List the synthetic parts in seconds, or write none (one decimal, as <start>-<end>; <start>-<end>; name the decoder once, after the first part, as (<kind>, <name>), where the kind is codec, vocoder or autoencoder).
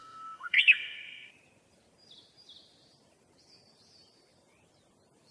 0.0-1.3 (codec, SNAC)